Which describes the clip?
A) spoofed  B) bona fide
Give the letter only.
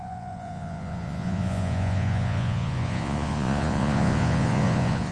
A